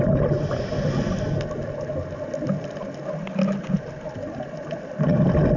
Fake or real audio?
real